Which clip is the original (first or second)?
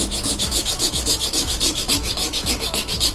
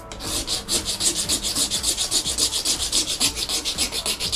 second